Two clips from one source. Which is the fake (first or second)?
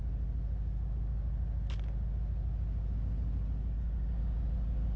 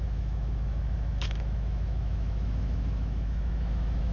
second